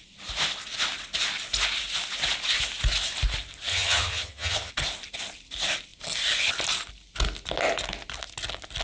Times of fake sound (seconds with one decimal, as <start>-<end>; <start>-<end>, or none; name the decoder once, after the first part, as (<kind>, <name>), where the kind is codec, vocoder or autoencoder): 3.7-4.7 (vocoder, HiFi-GAN)